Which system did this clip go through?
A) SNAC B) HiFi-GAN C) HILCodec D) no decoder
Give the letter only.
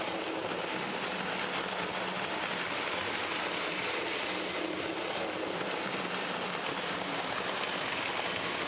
D